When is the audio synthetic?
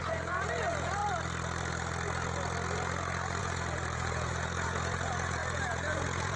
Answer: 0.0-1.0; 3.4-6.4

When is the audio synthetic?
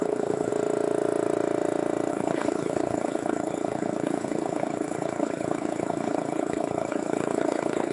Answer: 0.0-0.5; 2.1-7.9